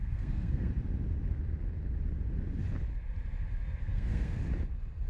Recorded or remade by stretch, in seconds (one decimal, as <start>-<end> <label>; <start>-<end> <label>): 0.0-0.7 remade; 0.7-3.8 recorded; 3.8-4.4 remade; 4.4-5.1 recorded